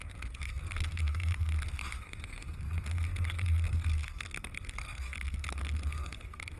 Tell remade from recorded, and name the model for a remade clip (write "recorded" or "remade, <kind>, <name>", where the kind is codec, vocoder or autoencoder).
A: remade, codec, SNAC